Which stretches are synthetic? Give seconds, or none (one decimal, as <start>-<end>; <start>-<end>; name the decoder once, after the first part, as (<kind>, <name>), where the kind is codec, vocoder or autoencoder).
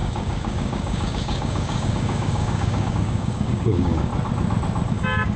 0.0-4.1 (codec, DAC); 4.9-5.4